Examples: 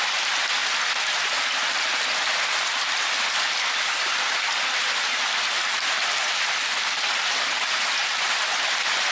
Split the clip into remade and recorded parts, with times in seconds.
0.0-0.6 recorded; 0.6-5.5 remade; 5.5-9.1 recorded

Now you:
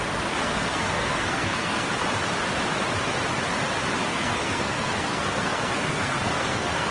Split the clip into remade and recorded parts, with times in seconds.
0.0-0.4 recorded; 0.4-1.9 remade; 1.9-4.1 recorded; 4.1-6.9 remade

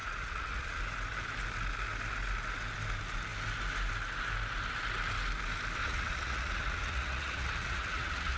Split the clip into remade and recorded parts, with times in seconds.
0.0-0.8 remade; 0.8-5.8 recorded; 5.8-8.4 remade

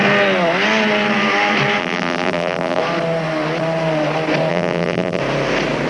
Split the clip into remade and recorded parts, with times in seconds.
0.0-1.8 recorded; 1.8-2.8 remade; 2.8-4.5 recorded; 4.5-5.2 remade; 5.2-5.9 recorded

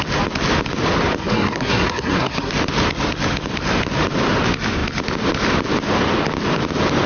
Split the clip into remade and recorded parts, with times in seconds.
0.0-1.2 recorded; 1.2-2.5 remade; 2.5-7.1 recorded